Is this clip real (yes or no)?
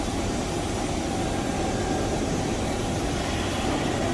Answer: yes